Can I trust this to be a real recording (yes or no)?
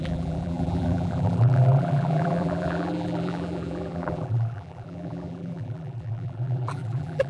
no